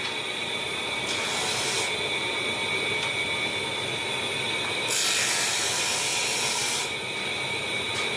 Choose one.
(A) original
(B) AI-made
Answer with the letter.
A